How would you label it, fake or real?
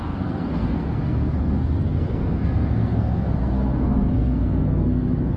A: fake